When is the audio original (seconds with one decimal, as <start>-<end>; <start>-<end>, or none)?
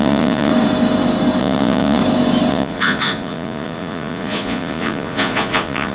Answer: 0.5-1.4; 2.0-2.5